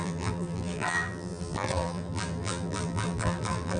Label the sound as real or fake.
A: fake